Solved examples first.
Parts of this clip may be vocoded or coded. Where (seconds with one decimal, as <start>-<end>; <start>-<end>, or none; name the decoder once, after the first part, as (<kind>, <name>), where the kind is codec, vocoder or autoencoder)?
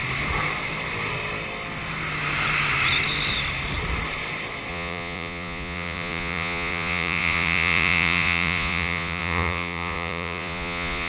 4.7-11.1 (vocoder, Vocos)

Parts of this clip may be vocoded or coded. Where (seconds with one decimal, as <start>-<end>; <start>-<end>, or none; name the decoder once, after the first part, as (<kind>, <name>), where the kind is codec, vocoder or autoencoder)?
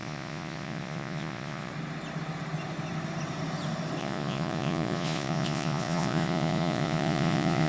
0.0-1.7 (vocoder, Vocos); 4.0-7.7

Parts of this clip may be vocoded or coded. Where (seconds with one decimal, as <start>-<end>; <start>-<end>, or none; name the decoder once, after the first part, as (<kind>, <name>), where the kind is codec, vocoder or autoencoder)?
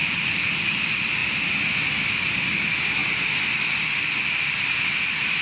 0.0-0.5 (vocoder, Vocos)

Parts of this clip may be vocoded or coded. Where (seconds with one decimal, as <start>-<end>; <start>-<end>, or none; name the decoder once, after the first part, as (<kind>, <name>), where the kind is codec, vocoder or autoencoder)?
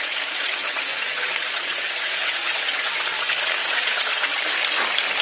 0.0-3.0 (vocoder, Vocos); 3.6-4.4